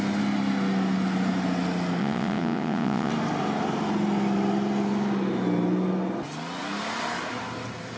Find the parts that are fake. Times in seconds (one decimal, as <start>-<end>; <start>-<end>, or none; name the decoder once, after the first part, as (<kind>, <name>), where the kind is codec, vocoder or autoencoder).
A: 2.0-3.1 (vocoder, WaveNeXt)